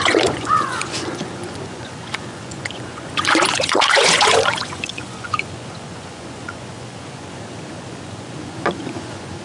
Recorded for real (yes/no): no